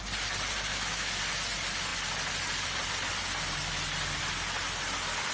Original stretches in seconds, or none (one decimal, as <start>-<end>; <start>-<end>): 0.0-0.7; 1.2-5.3